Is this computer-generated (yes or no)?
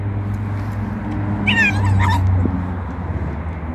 no